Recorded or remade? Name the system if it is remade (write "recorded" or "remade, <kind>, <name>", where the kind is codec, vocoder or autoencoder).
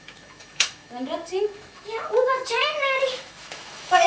remade, autoencoder, DAC-VAE